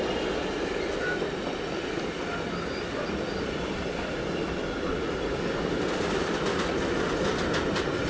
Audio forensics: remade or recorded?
recorded